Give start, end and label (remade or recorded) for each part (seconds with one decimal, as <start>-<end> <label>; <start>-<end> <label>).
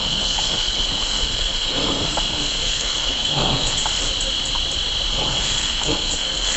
0.0-3.8 remade; 3.8-5.1 recorded; 5.1-6.6 remade